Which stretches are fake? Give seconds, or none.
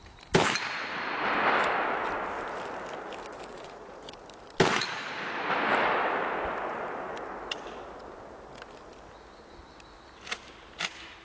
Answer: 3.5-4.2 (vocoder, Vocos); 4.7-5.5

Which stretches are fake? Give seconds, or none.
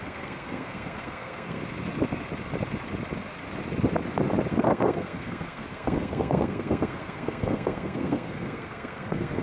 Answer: 0.0-1.6 (codec, SNAC); 4.5-9.4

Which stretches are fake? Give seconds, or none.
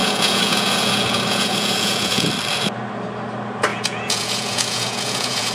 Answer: 0.0-2.3 (vocoder, Vocos); 3.7-5.5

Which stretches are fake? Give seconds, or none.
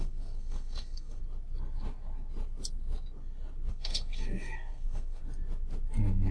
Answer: 0.0-1.2 (codec, SNAC); 3.7-5.2